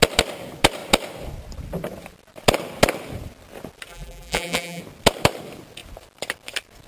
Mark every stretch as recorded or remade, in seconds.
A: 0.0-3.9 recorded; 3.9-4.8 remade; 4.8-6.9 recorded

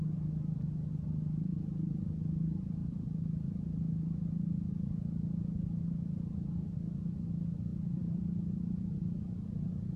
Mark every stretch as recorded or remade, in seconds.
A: 0.0-1.5 recorded; 1.5-2.0 remade; 2.0-2.8 recorded; 2.8-3.5 remade; 3.5-7.7 recorded; 7.7-9.0 remade; 9.0-10.0 recorded

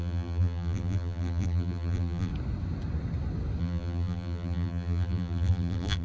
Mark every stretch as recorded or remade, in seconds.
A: 0.0-2.3 remade; 2.3-3.6 recorded; 3.6-6.0 remade

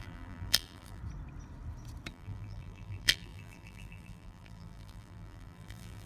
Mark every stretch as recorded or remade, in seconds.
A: 0.0-1.0 remade; 1.0-2.1 recorded; 2.1-6.1 remade

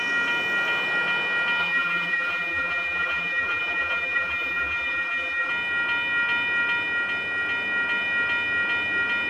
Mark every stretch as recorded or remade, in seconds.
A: 0.0-1.6 recorded; 1.6-5.5 remade; 5.5-9.3 recorded

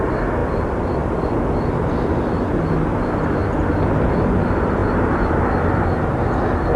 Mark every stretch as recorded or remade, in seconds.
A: 0.0-0.4 recorded; 0.4-1.2 remade; 1.2-4.8 recorded; 4.8-5.4 remade; 5.4-6.8 recorded

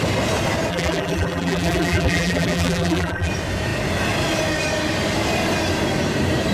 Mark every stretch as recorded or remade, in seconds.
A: 0.0-0.7 recorded; 0.7-3.3 remade; 3.3-6.5 recorded